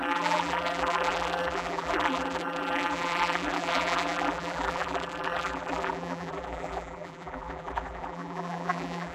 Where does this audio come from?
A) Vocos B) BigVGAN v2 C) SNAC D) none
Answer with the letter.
B